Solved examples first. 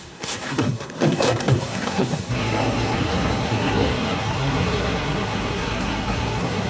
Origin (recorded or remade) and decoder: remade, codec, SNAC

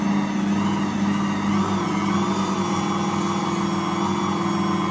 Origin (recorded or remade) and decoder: recorded